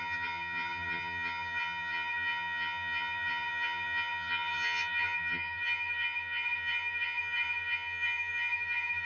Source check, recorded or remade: remade